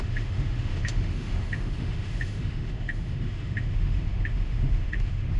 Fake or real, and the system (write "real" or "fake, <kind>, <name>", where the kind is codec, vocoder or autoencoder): fake, autoencoder, DAC-VAE